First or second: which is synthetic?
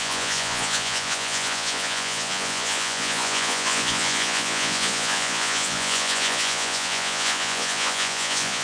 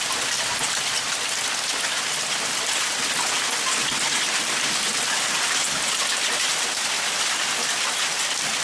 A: first